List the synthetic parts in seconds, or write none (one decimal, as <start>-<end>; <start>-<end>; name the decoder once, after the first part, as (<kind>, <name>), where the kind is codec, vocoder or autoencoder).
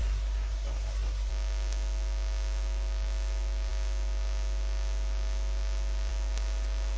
0.0-1.3 (codec, SNAC)